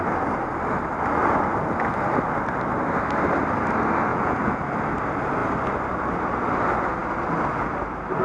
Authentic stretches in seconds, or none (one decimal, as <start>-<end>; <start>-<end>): 0.0-4.1; 4.6-8.2